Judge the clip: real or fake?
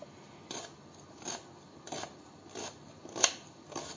real